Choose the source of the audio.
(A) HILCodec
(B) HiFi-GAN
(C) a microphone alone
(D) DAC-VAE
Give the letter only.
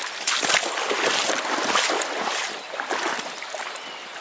C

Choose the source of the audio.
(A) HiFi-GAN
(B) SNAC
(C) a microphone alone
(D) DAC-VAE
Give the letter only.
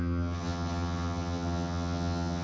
A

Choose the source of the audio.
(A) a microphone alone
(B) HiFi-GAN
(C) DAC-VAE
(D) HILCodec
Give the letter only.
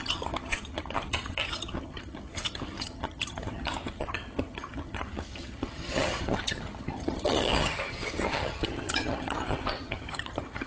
B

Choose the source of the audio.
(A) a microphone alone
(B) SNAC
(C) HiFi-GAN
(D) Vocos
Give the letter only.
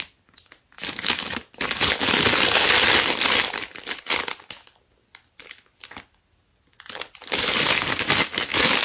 A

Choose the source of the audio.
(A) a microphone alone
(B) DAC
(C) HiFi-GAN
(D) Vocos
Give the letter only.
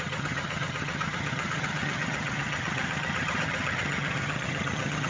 C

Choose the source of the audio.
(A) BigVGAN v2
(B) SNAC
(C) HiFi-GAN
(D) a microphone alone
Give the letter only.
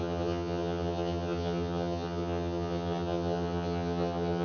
C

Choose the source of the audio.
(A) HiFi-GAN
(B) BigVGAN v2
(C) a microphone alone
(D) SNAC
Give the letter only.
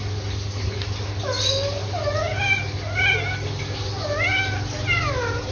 C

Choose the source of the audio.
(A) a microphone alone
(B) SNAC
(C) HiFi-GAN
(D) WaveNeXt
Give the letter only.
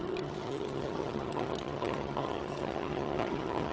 C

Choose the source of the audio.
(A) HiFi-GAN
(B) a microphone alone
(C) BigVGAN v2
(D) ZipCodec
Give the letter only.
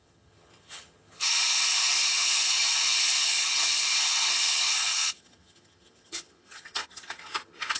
A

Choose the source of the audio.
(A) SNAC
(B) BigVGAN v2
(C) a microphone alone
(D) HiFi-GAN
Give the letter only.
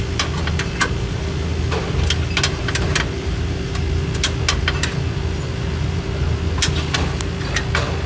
C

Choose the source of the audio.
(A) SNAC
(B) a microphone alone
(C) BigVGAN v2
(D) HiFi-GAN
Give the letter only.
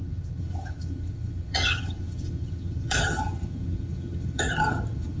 D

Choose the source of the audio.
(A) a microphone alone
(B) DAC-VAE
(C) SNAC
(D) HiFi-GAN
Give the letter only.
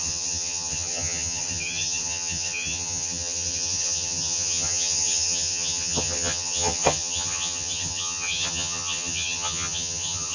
D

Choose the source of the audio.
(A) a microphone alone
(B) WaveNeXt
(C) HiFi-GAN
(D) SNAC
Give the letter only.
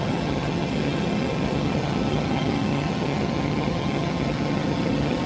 C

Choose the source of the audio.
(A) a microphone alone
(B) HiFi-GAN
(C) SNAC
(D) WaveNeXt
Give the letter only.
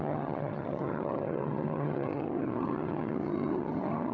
B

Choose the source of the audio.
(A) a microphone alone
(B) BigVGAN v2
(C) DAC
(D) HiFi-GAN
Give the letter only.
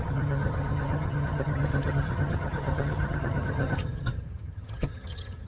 D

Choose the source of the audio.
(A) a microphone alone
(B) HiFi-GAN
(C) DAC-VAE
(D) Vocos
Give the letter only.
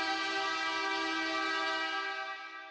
A